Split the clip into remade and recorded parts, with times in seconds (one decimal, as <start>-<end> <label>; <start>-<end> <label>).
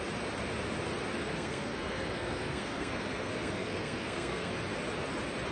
0.0-1.2 recorded; 1.2-4.5 remade; 4.5-5.5 recorded